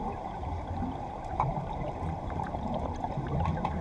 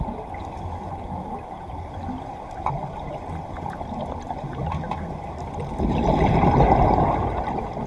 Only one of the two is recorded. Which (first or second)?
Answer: second